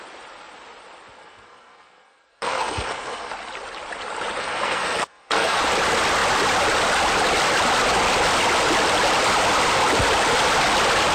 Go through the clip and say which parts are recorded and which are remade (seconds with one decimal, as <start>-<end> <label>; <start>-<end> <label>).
0.0-1.2 recorded; 1.2-3.3 remade; 3.3-4.4 recorded; 4.4-5.6 remade; 5.6-11.1 recorded

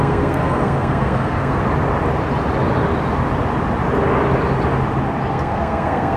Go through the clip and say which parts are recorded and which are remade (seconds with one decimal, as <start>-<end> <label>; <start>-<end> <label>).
0.0-1.6 remade; 1.6-5.3 recorded; 5.3-6.2 remade

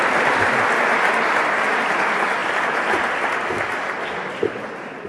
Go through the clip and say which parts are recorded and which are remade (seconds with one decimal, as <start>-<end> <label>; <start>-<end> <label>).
0.0-5.1 recorded

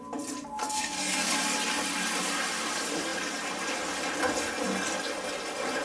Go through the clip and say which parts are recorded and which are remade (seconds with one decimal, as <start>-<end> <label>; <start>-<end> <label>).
0.0-0.6 recorded; 0.6-1.3 remade; 1.3-5.8 recorded

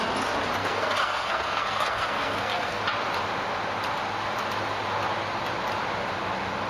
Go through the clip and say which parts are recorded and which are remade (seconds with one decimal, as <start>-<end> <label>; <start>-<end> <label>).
0.0-0.6 recorded; 0.6-2.8 remade; 2.8-6.7 recorded

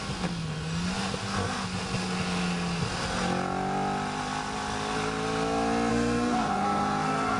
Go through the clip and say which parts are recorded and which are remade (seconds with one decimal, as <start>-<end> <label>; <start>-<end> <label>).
0.0-5.9 recorded; 5.9-7.4 remade

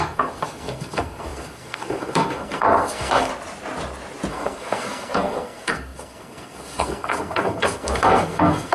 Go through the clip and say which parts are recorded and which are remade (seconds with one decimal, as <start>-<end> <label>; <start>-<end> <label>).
0.0-3.3 remade; 3.3-4.3 recorded; 4.3-8.7 remade

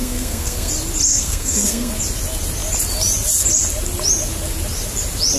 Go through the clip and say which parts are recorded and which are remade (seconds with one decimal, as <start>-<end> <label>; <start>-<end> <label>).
0.0-0.7 remade; 0.7-1.1 recorded; 1.1-1.9 remade; 1.9-5.4 recorded